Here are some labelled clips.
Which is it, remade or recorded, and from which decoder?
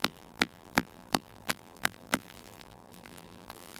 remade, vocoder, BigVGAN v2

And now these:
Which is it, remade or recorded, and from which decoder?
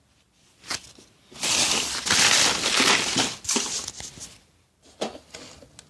recorded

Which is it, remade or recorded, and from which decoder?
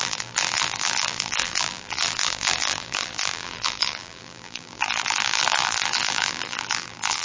remade, vocoder, BigVGAN v2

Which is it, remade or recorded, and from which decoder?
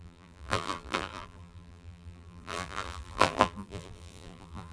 remade, vocoder, BigVGAN v2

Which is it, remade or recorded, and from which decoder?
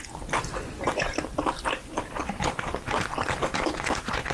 recorded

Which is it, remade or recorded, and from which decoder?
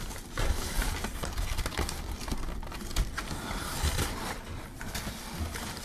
recorded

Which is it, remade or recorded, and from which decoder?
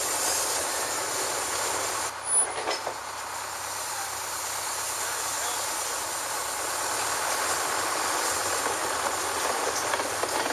recorded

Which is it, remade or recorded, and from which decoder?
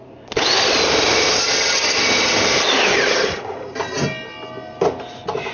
recorded